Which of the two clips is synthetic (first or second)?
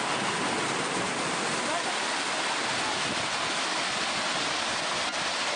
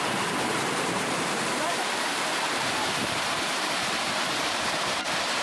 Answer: second